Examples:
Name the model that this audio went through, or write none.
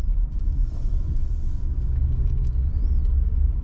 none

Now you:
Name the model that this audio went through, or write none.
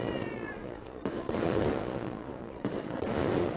vocoder, Vocos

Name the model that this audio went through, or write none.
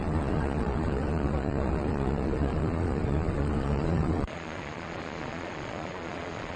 vocoder, Vocos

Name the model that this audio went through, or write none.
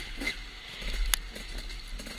none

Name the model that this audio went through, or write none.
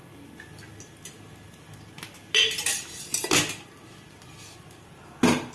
none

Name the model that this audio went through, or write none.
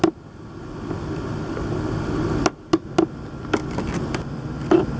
none